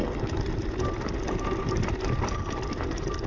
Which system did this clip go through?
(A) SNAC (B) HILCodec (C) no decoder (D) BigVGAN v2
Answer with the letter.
C